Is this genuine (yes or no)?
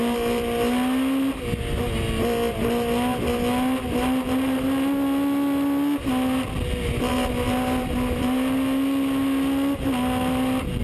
yes